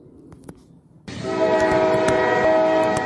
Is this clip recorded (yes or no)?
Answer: yes